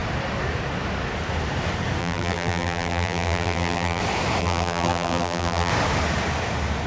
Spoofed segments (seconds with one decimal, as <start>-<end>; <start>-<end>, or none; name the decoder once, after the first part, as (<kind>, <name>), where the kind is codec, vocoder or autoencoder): 2.0-4.0 (vocoder, BigVGAN v2); 4.4-5.7